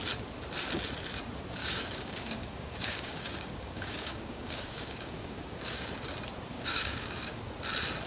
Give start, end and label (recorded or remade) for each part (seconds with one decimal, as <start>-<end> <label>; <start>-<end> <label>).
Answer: 0.0-1.6 recorded; 1.6-5.9 remade; 5.9-6.5 recorded; 6.5-7.4 remade; 7.4-8.1 recorded